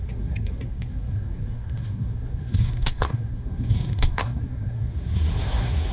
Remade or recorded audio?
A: remade